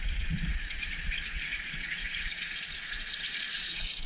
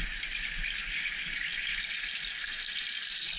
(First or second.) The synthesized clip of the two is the first